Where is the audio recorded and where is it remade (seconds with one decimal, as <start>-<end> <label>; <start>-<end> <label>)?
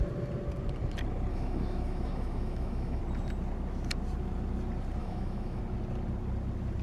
0.0-1.3 recorded; 1.3-3.0 remade; 3.0-5.0 recorded; 5.0-5.6 remade; 5.6-6.8 recorded